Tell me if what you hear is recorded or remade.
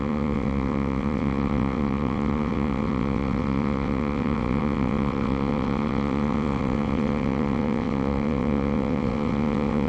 remade